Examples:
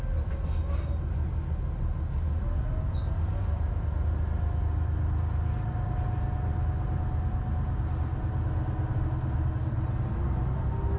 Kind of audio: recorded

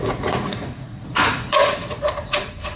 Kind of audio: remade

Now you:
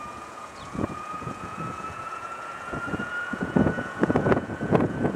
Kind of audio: remade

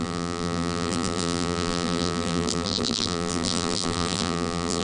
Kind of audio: remade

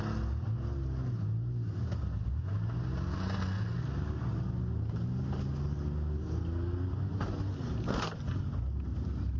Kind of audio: recorded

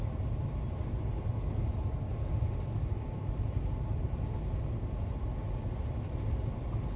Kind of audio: recorded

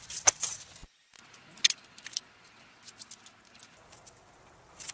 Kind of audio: recorded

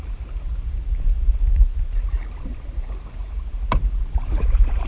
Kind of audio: remade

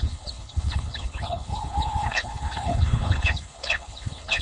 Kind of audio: remade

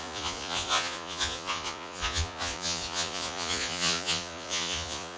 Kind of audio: remade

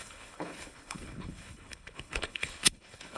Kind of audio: remade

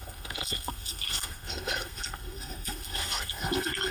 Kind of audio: remade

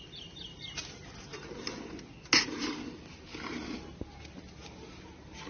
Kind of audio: recorded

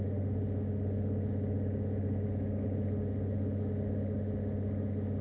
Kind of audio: remade